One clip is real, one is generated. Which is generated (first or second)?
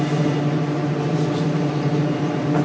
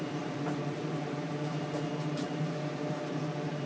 second